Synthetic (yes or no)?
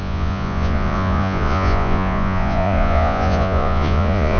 yes